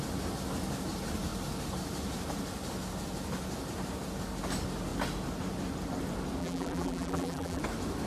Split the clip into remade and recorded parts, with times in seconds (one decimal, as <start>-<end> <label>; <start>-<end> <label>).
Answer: 0.0-6.4 recorded; 6.4-7.6 remade; 7.6-8.1 recorded